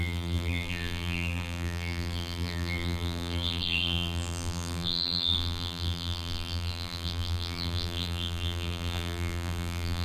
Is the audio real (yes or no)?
no